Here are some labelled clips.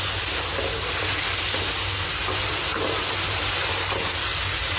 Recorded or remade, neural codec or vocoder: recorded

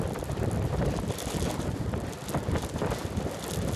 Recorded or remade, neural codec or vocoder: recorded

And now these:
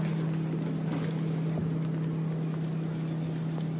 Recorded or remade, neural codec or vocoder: recorded